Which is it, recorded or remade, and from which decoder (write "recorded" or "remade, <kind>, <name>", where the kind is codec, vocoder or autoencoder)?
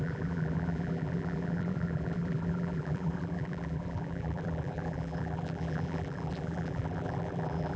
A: remade, vocoder, BigVGAN v2